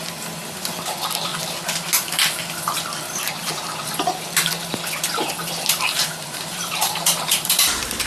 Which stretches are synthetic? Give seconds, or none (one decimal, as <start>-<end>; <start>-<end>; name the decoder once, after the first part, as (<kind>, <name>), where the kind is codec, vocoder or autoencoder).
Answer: 6.0-8.1 (vocoder, BigVGAN v2)